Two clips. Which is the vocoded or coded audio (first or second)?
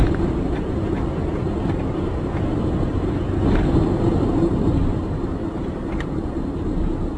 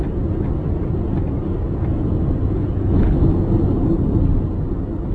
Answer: first